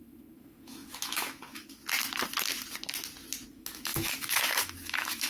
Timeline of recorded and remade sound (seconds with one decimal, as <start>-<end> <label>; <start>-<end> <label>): 0.0-1.8 remade; 1.8-3.5 recorded; 3.5-5.3 remade